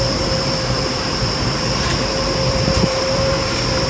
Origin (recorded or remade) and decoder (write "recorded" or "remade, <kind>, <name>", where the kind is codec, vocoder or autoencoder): remade, vocoder, BigVGAN v2